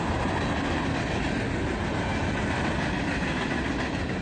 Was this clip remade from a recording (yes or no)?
no